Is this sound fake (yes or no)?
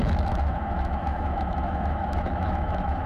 yes